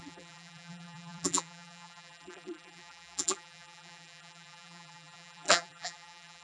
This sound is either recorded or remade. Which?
remade